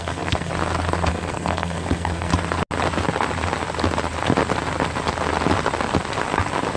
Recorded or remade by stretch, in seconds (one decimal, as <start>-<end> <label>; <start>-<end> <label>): 0.0-0.5 remade; 0.5-1.1 recorded; 1.1-2.3 remade; 2.3-6.8 recorded